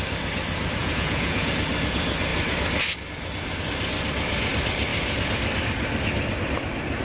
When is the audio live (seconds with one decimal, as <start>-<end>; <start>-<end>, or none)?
0.0-0.8; 1.5-7.0